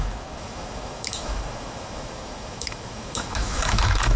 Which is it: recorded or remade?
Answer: remade